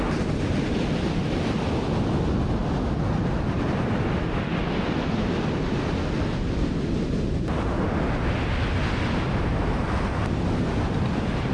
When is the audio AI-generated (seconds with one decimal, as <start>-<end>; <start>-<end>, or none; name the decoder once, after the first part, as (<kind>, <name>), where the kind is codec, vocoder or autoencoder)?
none